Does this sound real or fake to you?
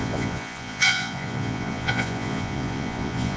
fake